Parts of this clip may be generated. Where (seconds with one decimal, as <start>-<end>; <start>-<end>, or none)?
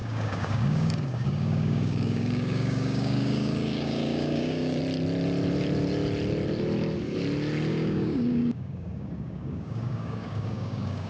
0.0-4.8; 7.7-11.1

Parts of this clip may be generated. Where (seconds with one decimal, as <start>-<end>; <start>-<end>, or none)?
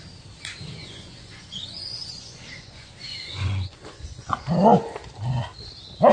0.8-4.5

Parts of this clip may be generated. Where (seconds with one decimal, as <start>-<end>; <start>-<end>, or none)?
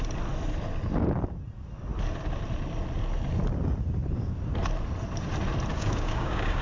5.7-6.6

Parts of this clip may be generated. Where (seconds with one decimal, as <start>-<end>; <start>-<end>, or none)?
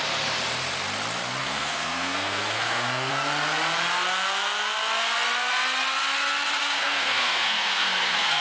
1.4-3.1; 6.6-8.4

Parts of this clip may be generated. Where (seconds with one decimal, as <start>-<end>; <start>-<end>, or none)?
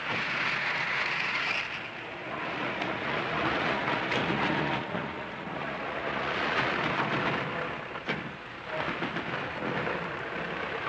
0.0-1.5; 2.2-6.8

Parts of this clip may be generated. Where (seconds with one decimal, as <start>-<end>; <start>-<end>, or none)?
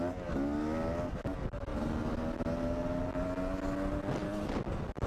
none